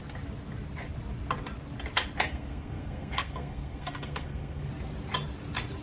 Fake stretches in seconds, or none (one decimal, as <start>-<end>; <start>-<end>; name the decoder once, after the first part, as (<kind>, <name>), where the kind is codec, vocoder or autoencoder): 2.3-4.7 (codec, SNAC)